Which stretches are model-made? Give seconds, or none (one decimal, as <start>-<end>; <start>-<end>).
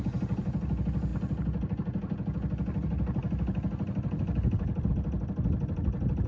none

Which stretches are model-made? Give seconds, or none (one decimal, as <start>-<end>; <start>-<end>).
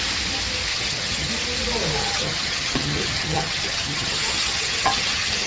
0.7-1.3; 2.0-5.5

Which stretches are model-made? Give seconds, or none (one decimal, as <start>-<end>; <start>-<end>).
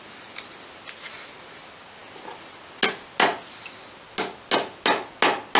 none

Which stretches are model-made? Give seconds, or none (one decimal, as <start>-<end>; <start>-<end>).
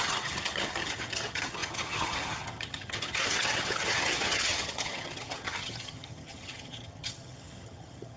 0.0-8.2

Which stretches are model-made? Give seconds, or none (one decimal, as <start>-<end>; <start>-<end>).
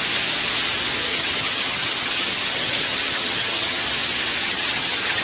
1.1-3.8; 4.4-5.2